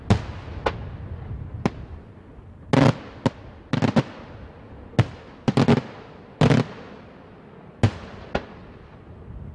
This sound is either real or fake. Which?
real